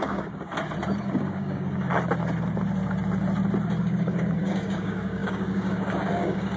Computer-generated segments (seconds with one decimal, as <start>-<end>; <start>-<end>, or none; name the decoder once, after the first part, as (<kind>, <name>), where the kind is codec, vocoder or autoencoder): 0.0-0.5 (codec, DAC); 1.0-1.9; 3.8-6.6